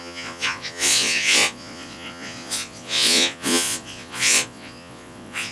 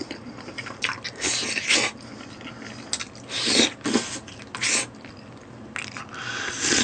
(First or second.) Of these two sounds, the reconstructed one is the first